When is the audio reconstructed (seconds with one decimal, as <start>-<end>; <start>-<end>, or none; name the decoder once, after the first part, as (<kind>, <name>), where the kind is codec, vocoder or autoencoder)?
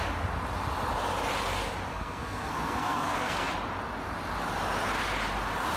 1.9-3.5 (codec, SNAC)